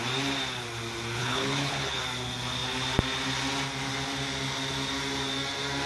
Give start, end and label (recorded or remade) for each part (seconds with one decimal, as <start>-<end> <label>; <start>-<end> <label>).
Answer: 0.0-1.2 recorded; 1.2-2.0 remade; 2.0-5.9 recorded